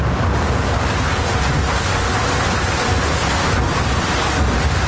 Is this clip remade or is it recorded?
recorded